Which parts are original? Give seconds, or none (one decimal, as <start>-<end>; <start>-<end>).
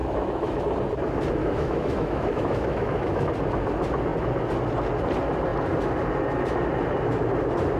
0.6-1.4; 3.3-7.8